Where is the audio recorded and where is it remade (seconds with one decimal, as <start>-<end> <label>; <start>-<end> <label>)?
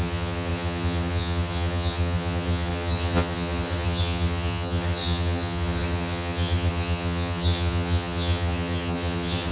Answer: 0.0-9.5 remade